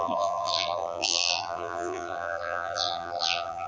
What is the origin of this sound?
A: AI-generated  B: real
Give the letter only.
A